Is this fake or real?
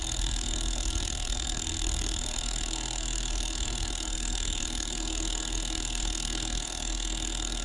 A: fake